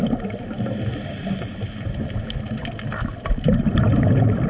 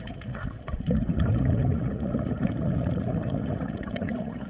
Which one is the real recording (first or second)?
first